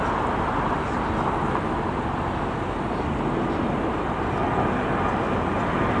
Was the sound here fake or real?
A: real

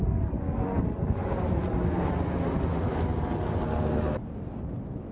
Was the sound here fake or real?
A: real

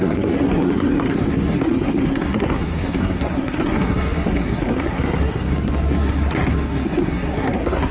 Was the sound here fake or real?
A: fake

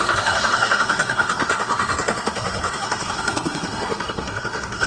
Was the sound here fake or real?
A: fake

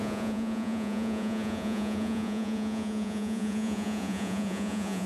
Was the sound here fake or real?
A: fake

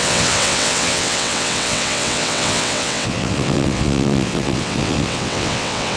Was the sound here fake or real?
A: fake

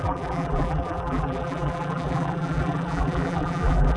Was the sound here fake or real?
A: fake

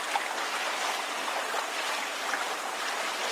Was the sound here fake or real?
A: real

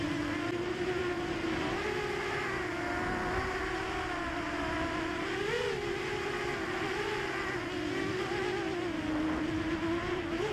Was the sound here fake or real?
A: real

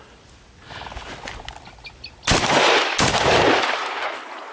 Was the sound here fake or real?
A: real